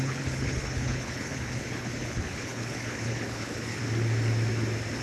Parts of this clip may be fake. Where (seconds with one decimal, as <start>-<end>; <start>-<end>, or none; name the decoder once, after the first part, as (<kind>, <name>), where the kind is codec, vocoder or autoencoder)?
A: 0.0-3.8 (codec, HILCodec)